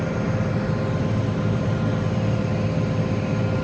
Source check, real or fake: real